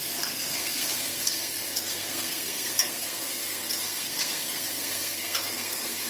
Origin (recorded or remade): remade